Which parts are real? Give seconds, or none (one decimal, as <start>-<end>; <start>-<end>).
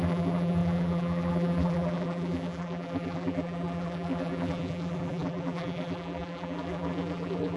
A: none